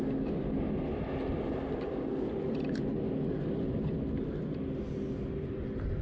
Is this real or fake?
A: real